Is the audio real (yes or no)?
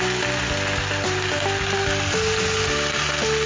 yes